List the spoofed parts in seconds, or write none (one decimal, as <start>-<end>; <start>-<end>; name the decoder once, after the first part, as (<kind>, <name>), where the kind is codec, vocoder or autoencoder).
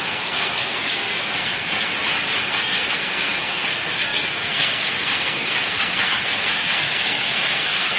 0.0-1.9 (codec, SNAC); 2.4-8.0